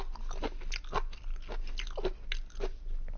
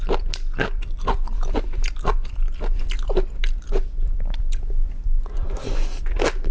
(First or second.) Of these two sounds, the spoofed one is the second